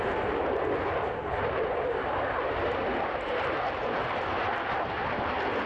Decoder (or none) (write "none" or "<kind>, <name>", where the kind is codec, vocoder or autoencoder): none